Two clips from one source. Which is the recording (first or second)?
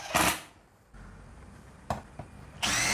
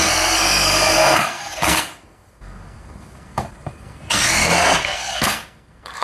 first